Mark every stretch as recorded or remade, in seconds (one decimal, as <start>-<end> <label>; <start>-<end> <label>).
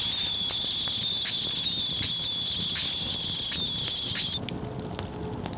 0.0-5.6 recorded